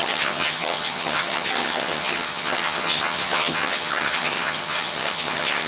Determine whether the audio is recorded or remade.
remade